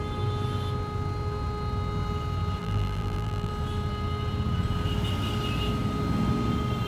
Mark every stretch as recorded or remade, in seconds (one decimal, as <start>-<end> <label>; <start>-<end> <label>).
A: 0.0-2.6 recorded; 2.6-3.5 remade; 3.5-6.9 recorded